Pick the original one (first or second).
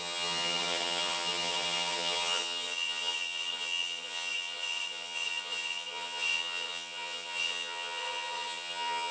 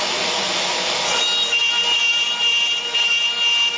second